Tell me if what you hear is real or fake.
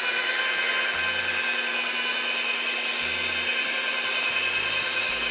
real